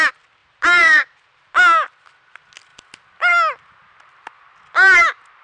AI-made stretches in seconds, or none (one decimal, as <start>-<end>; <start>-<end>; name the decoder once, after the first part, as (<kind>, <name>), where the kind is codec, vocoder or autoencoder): 0.4-1.6 (vocoder, BigVGAN v2)